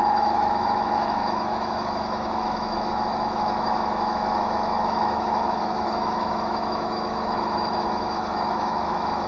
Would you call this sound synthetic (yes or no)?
yes